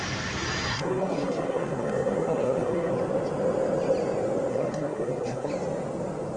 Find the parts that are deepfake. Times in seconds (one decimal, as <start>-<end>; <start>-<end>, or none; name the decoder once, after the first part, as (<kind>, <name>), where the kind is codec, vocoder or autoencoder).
0.7-2.9 (codec, SNAC); 4.5-5.5